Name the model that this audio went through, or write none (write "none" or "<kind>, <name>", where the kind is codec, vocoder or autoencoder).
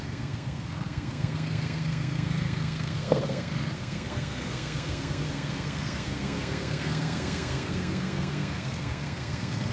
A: codec, SNAC